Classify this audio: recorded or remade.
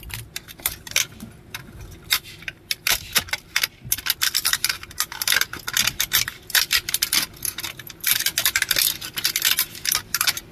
recorded